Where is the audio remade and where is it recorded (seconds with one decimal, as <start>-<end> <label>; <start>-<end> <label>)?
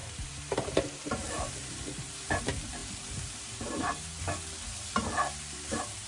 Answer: 0.0-4.1 remade; 4.1-4.9 recorded; 4.9-6.1 remade